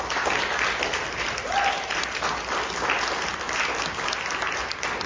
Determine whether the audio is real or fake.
real